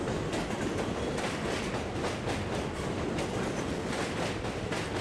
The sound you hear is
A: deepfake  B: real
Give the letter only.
B